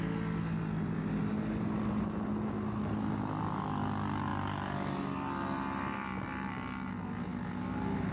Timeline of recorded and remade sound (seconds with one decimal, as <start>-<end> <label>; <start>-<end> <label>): 0.0-8.1 recorded